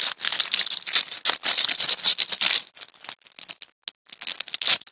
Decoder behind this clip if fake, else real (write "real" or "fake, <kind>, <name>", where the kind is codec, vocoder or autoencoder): real